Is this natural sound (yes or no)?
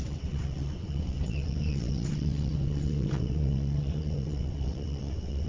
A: no